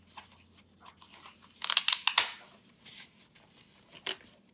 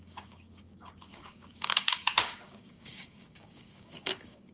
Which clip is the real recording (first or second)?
first